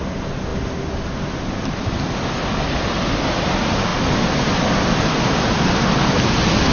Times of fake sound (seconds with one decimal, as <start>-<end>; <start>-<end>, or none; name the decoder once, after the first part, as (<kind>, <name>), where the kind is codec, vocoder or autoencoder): none